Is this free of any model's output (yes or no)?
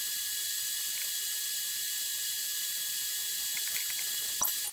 no